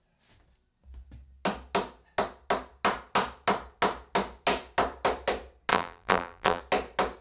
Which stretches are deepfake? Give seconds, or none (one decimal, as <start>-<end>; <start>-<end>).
5.7-6.6